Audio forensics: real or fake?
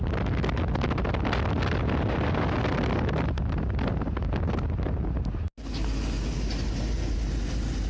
real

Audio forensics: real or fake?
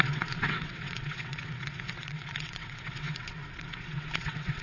fake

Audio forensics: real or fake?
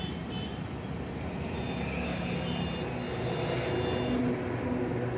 real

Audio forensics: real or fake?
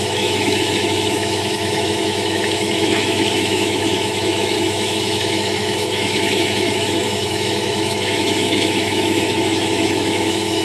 fake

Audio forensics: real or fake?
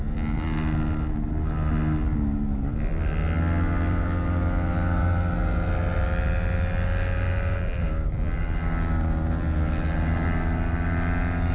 real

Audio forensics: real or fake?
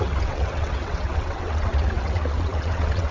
fake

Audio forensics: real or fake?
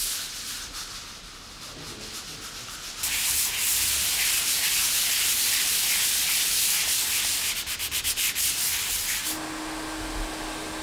real